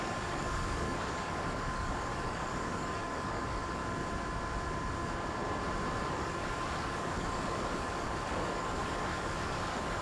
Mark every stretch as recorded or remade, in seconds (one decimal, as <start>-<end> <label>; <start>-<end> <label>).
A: 0.0-3.8 remade; 3.8-6.1 recorded; 6.1-10.0 remade